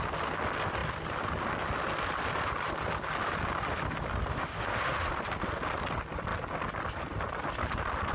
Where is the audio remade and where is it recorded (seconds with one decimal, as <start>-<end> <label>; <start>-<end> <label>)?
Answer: 0.0-4.3 recorded; 4.3-5.1 remade; 5.1-8.1 recorded